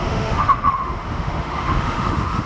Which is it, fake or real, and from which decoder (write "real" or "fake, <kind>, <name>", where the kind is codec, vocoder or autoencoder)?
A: fake, autoencoder, DAC-VAE